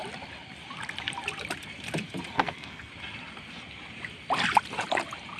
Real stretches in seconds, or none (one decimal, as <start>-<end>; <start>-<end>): 0.0-2.3; 2.9-5.4

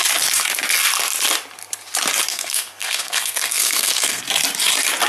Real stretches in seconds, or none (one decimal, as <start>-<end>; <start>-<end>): 0.0-2.3; 4.2-5.1

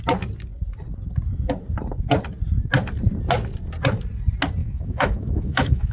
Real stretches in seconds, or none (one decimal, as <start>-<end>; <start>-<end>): 0.0-4.6

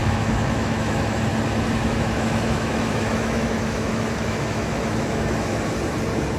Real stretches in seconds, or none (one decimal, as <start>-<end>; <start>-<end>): 1.3-1.8; 5.6-6.4

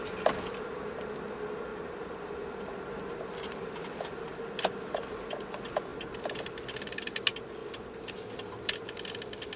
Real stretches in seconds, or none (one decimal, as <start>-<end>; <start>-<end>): 0.0-1.7; 4.1-9.6

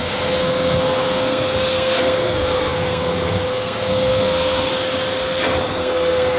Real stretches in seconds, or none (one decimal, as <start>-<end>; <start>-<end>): 4.7-5.7